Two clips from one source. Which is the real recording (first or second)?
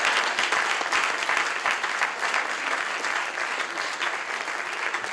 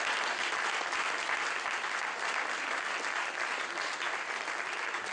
first